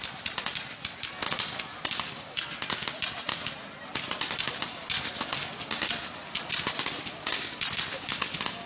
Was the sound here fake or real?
real